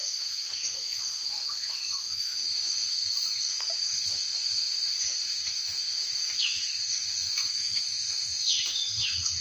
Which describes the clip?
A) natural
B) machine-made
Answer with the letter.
B